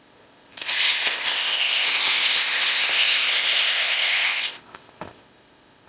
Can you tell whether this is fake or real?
fake